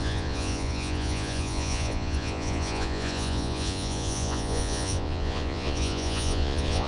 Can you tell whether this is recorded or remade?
remade